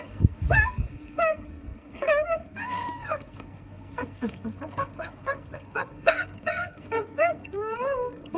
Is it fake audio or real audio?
fake